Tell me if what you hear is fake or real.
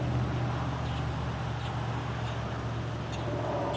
real